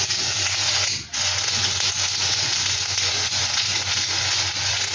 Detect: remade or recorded remade